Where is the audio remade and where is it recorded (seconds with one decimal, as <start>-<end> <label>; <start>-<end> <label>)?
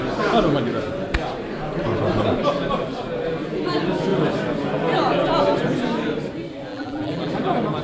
0.0-6.7 recorded; 6.7-7.3 remade; 7.3-7.8 recorded